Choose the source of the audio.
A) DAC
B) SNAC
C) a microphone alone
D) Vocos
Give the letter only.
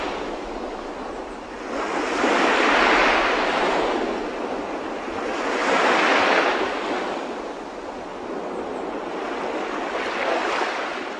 C